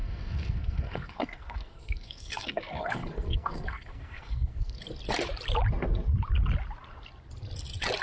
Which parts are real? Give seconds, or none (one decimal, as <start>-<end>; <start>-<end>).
4.8-8.0